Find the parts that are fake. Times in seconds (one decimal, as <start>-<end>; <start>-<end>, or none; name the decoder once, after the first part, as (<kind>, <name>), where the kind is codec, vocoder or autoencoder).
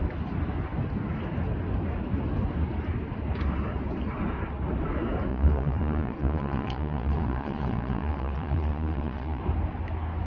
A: 5.3-9.4 (vocoder, Vocos)